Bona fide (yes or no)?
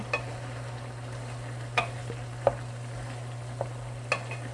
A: yes